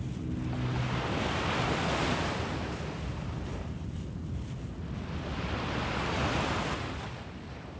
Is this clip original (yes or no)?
yes